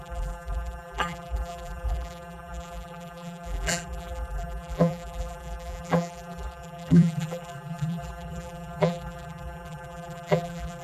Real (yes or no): no